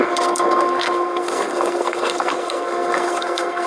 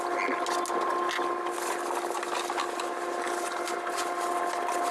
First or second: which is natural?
second